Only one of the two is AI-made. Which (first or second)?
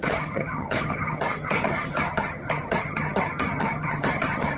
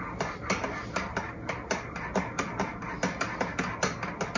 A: first